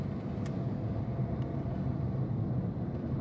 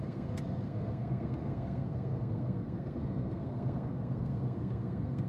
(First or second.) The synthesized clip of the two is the second